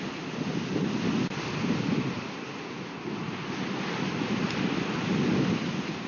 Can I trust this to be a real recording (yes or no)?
yes